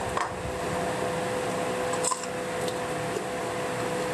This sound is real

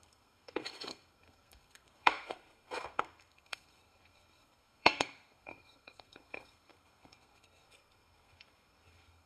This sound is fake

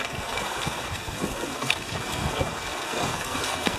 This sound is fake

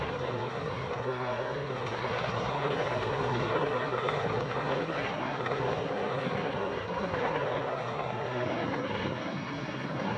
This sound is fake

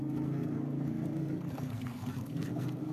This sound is fake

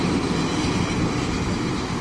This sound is real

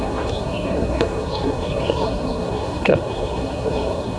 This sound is fake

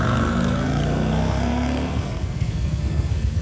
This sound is fake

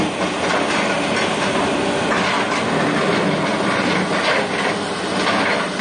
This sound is real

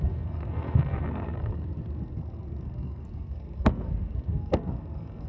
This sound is fake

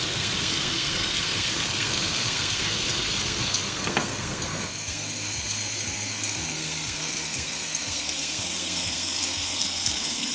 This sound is fake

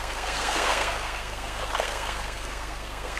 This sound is fake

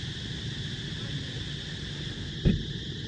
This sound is real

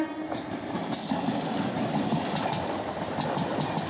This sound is real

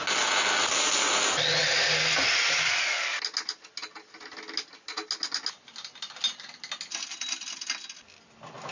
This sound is real